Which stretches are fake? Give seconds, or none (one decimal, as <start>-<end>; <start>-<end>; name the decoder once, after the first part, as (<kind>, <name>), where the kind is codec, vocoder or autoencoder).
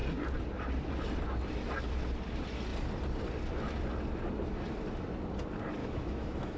5.8-6.6 (autoencoder, DAC-VAE)